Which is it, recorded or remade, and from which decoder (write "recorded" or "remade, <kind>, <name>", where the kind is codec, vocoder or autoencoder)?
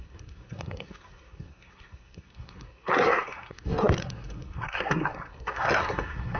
remade, codec, SNAC